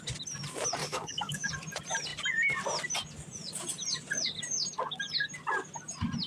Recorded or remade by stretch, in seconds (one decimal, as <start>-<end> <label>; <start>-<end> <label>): 0.0-0.8 recorded; 0.8-1.5 remade; 1.5-6.3 recorded